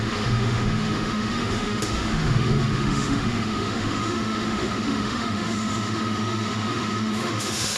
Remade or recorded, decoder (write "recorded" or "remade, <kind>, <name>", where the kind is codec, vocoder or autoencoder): remade, autoencoder, DAC-VAE